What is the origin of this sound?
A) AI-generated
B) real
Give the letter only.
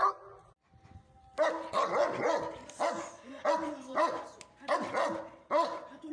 B